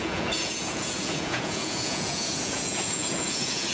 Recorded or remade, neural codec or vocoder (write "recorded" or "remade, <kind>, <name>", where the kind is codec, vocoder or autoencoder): remade, vocoder, Vocos